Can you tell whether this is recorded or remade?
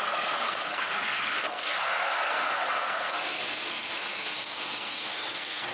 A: remade